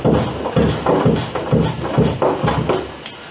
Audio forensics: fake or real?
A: real